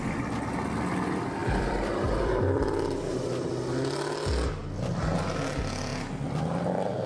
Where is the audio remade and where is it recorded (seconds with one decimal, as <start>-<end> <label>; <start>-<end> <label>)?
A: 0.0-1.4 recorded; 1.4-3.2 remade; 3.2-7.1 recorded